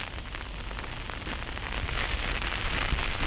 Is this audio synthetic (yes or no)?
no